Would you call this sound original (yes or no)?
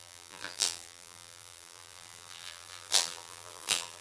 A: no